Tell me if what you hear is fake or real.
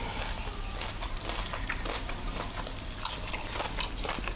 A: real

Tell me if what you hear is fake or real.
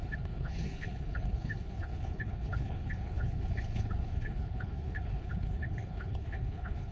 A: fake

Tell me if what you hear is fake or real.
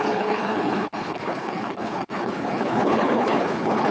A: fake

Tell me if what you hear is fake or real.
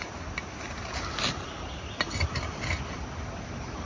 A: real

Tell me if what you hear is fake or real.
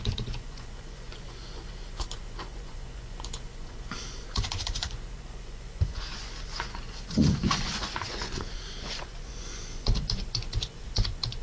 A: fake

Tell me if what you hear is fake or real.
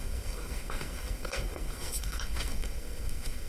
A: fake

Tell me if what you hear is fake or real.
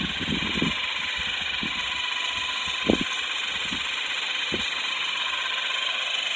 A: real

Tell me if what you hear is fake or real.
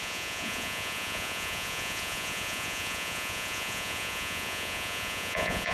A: fake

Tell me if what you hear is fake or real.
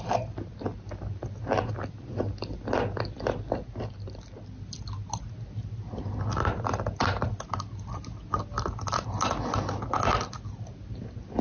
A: real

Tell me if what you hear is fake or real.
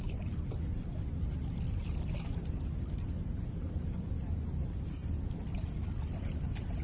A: real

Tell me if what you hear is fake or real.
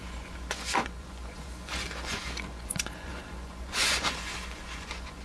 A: fake